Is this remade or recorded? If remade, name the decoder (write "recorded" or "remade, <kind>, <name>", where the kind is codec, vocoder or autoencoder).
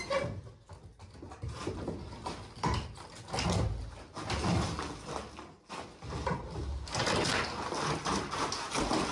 recorded